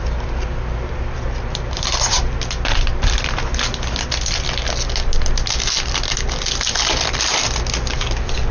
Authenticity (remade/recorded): recorded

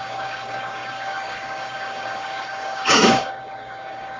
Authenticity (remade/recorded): remade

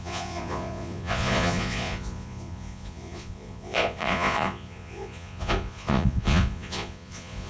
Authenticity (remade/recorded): remade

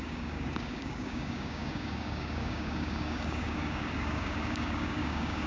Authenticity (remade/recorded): remade